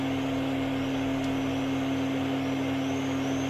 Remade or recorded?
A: recorded